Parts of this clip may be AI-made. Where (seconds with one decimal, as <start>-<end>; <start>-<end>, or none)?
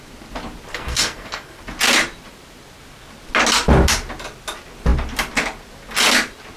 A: 0.7-1.6